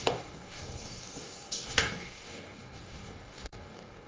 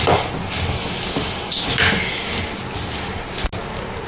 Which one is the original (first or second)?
second